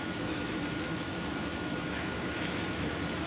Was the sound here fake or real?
fake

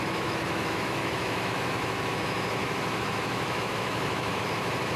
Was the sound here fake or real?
fake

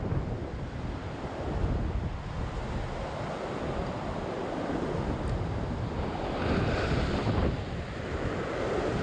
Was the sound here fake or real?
real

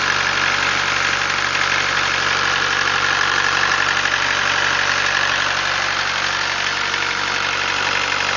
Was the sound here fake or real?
real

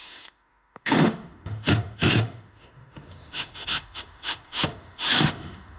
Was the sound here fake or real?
fake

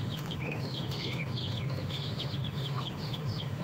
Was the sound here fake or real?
fake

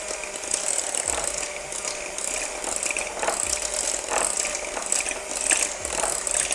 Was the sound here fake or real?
real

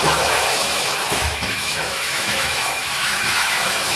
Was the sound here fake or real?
fake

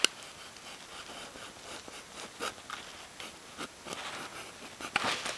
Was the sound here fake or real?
real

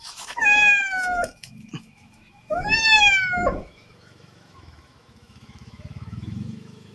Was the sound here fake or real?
fake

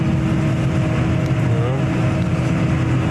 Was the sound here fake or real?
real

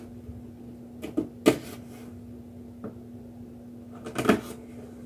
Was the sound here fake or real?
real